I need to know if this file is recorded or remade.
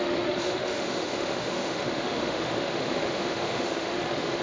remade